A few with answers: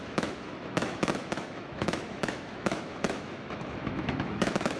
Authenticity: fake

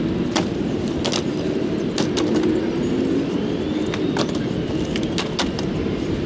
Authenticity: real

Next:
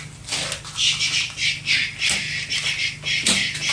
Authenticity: real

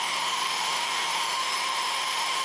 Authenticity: fake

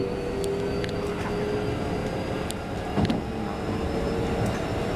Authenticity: real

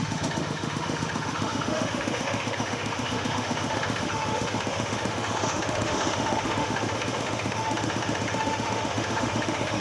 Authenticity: fake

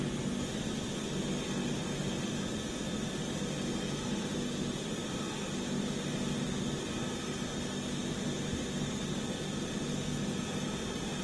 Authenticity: real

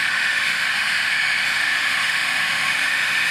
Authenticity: fake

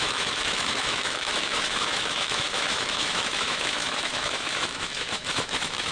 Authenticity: fake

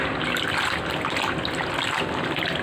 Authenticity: real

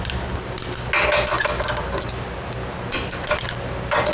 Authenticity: real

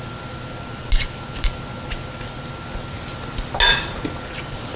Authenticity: real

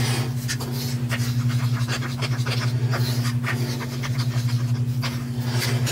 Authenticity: real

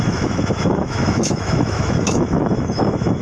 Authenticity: fake